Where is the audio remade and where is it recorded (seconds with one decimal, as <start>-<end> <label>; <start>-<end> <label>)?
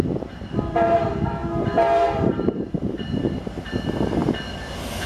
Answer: 0.0-1.4 remade; 1.4-2.2 recorded; 2.2-4.2 remade; 4.2-5.1 recorded